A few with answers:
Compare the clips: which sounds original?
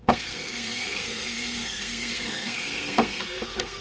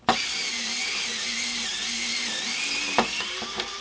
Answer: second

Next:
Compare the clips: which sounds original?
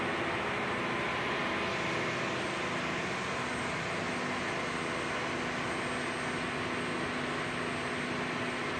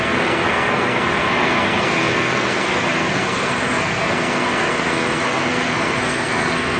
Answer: first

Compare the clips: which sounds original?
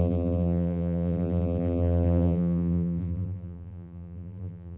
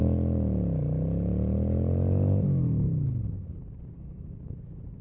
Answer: second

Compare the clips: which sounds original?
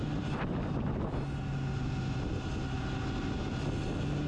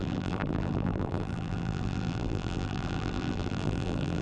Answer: first